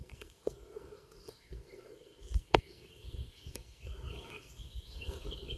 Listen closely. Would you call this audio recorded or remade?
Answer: remade